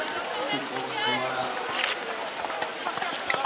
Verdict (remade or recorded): recorded